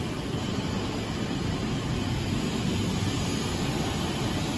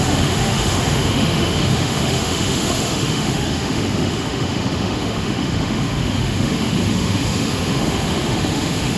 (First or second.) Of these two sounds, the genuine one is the first